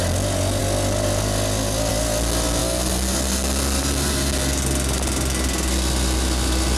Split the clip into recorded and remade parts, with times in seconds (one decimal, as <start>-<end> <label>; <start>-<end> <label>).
0.0-6.8 recorded